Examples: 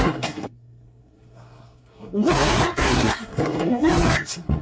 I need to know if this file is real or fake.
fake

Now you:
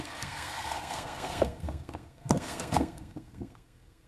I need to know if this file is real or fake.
fake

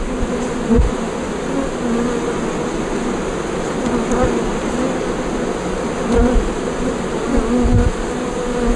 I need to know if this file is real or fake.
real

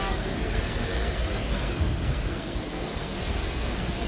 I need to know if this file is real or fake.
fake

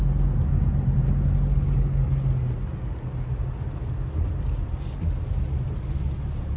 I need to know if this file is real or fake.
real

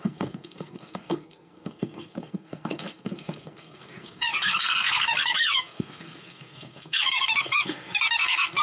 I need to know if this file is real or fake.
fake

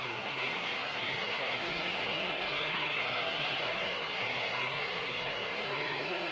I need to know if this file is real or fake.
fake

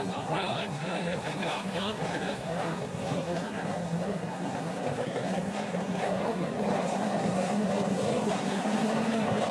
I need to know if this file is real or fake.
fake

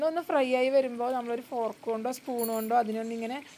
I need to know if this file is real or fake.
real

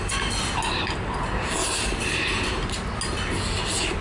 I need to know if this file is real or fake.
real